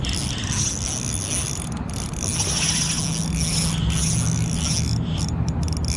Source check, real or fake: real